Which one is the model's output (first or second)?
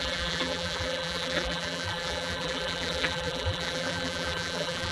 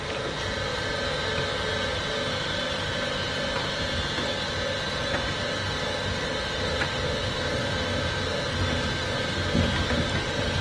first